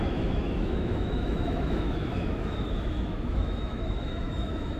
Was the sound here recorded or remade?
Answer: remade